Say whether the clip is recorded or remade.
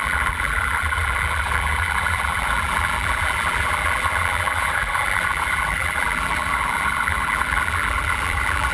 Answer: remade